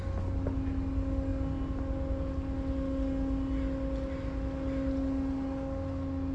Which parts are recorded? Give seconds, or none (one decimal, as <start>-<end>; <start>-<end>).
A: 0.0-6.3